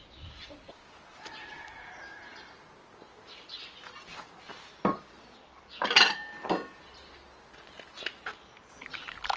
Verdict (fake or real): real